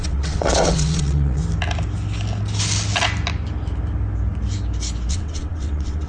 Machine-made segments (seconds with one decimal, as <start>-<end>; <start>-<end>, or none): 0.0-1.4; 5.1-6.1